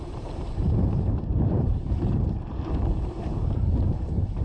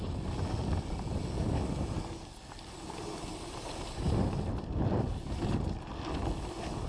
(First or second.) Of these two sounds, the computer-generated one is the first